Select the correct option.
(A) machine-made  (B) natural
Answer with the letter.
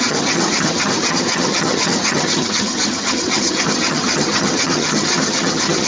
A